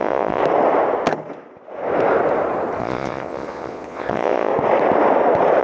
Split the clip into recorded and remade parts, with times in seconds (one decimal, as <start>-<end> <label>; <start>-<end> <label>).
0.0-0.4 remade; 0.4-2.8 recorded; 2.8-4.5 remade; 4.5-5.6 recorded